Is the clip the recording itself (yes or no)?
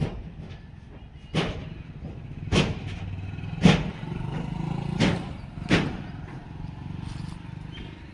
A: yes